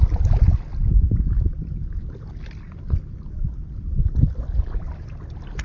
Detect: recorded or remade recorded